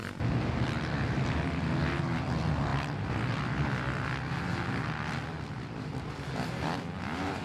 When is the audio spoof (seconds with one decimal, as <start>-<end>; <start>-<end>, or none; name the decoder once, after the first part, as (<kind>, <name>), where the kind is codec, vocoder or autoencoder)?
none